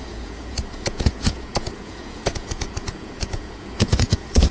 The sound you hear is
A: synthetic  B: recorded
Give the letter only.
A